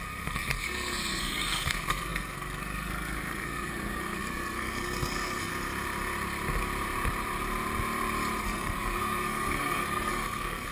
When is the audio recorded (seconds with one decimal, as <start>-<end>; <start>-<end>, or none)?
5.5-8.4